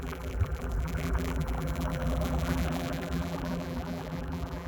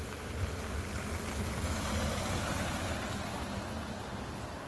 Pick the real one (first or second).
second